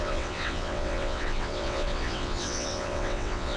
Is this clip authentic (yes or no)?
no